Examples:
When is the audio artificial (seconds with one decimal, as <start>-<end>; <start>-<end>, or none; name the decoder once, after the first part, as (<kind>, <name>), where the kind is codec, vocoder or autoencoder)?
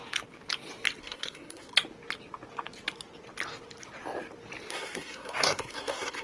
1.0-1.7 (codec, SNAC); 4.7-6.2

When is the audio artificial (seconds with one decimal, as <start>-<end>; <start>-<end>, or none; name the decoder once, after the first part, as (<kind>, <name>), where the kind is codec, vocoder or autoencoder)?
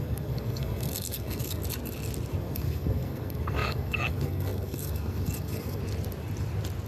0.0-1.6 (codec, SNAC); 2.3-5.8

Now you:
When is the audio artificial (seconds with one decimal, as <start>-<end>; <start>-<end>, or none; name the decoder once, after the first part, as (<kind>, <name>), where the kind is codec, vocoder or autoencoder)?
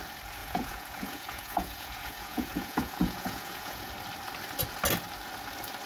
0.4-3.9 (vocoder, Vocos)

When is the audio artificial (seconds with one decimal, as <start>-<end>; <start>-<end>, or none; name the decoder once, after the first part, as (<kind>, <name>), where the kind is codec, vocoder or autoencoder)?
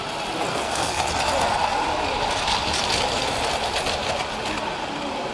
0.5-1.1 (codec, SNAC)